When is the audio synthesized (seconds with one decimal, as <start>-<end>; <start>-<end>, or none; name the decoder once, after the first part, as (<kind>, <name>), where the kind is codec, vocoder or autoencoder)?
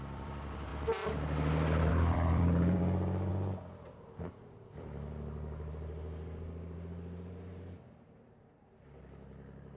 0.0-9.8 (vocoder, BigVGAN v2)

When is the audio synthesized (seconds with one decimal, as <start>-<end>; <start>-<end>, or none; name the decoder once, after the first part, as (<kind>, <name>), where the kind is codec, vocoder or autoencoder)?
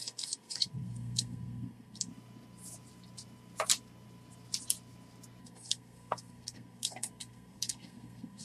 0.0-2.1 (codec, SNAC); 5.4-8.4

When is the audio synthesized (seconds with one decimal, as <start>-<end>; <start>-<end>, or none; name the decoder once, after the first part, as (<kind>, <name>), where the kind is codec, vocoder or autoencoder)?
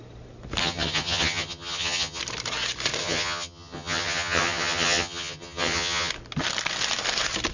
0.6-2.2 (vocoder, HiFi-GAN); 3.0-6.1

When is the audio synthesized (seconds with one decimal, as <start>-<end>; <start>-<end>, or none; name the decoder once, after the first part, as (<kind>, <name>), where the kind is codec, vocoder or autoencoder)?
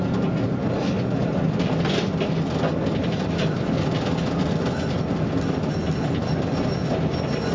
none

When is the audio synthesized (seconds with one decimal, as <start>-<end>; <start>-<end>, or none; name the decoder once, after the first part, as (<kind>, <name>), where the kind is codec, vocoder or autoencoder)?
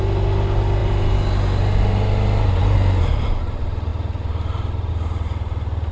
none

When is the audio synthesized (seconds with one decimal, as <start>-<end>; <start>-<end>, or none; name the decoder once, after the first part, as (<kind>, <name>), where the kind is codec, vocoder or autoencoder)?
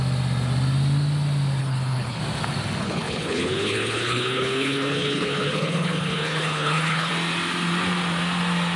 1.6-2.2 (codec, HILCodec); 2.8-7.1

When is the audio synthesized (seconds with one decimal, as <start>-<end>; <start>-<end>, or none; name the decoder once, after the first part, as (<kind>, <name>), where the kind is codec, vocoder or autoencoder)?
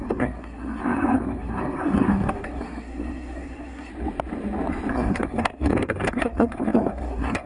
0.0-3.9 (codec, SNAC); 4.9-7.5